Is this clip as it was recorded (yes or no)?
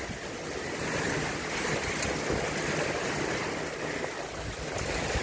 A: yes